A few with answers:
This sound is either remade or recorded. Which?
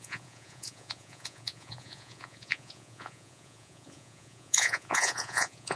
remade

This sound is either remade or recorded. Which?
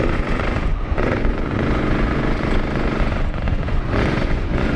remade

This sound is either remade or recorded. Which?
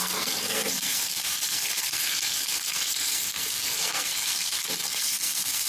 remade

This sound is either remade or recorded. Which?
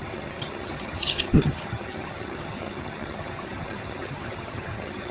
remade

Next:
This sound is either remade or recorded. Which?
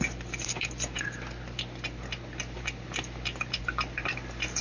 recorded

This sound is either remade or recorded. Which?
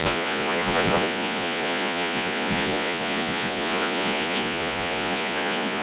remade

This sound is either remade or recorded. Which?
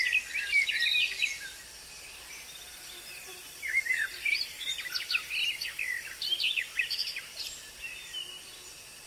remade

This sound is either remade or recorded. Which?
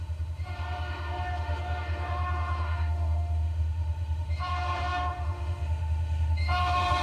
remade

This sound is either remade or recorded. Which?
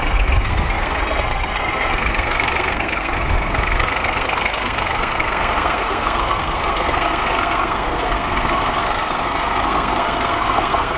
remade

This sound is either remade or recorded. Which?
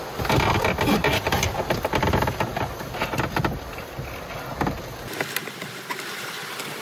recorded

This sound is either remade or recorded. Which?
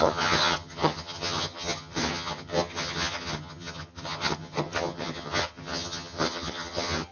remade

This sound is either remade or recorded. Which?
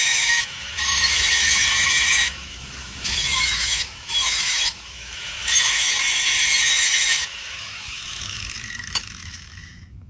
remade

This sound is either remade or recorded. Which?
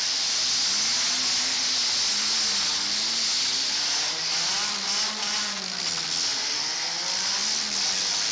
recorded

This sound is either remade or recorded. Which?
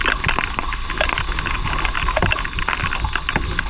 recorded